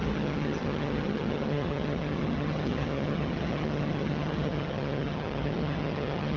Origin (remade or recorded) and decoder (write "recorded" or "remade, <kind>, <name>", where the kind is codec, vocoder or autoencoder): remade, vocoder, HiFi-GAN